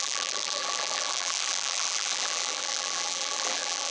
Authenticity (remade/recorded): remade